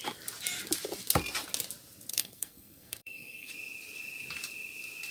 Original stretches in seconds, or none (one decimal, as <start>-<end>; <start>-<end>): 0.0-2.1; 3.5-5.1